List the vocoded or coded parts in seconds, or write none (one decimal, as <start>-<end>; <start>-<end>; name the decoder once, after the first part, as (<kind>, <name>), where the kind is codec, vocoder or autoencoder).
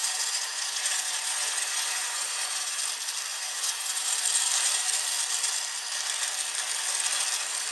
0.0-2.8 (vocoder, Vocos); 3.3-4.1